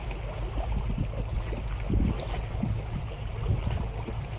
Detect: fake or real real